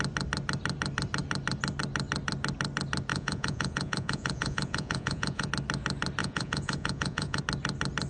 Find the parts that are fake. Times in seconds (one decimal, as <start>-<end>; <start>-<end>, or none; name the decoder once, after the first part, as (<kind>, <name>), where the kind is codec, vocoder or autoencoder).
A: 3.1-5.5 (vocoder, Vocos); 6.2-7.4